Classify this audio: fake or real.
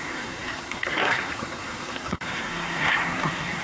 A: fake